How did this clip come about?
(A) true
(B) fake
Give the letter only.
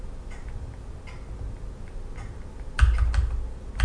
A